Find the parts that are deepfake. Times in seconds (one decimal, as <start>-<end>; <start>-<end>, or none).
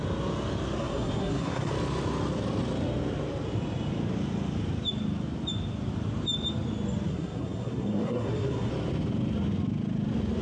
0.8-1.7; 7.1-8.7